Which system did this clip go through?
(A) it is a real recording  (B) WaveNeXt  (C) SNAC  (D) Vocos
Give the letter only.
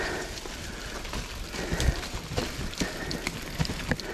A